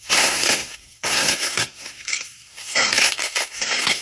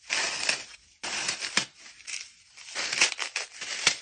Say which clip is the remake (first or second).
first